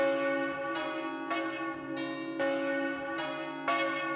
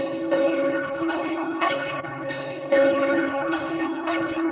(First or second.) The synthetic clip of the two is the second